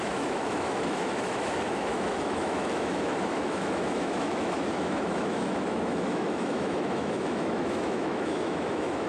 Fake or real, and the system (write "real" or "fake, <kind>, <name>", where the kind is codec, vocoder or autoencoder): fake, autoencoder, DAC-VAE